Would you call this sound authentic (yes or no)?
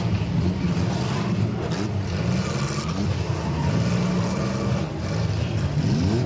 yes